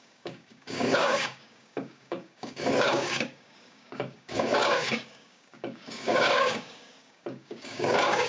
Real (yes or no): no